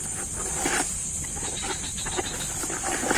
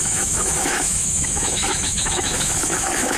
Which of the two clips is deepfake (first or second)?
second